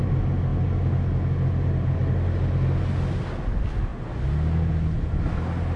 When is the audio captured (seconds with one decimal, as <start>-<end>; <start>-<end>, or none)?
0.0-5.8